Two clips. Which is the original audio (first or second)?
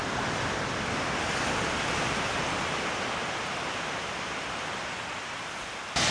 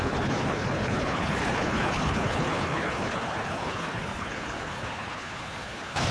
first